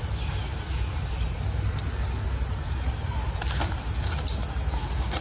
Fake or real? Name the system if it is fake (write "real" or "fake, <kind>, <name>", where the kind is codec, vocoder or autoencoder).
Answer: real